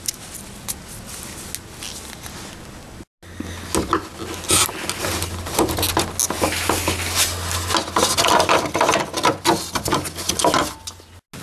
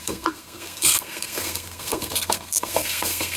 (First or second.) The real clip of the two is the first